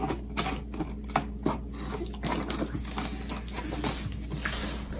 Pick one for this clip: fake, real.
real